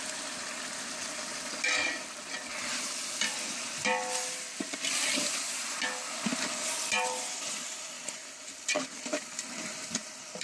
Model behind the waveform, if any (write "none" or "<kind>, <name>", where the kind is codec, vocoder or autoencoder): none